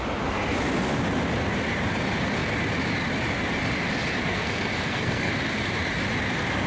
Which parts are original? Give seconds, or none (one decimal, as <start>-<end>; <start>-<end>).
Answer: 0.0-4.2; 5.3-6.7

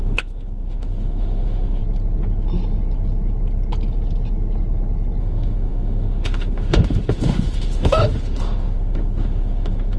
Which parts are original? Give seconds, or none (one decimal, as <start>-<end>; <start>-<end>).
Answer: 1.8-5.2

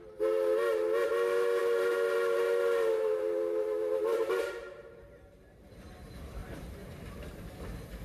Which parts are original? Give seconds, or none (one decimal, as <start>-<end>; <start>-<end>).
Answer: 0.0-1.6; 5.8-6.4; 7.6-8.0

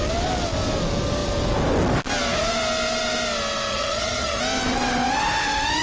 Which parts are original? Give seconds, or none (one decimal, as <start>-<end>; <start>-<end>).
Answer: 0.0-3.7; 4.4-5.8

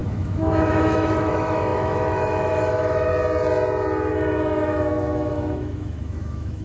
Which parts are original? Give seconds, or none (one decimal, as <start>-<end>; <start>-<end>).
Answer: 3.1-4.1

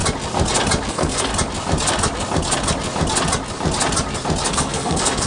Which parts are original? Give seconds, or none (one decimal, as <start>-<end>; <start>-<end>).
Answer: 0.0-0.9; 1.3-4.5